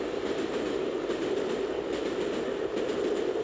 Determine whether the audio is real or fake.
real